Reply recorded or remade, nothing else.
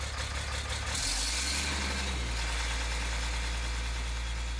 recorded